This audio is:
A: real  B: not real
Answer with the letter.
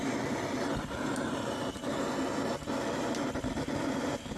A